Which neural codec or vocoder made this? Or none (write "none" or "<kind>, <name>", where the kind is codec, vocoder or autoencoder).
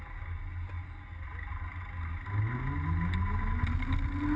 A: none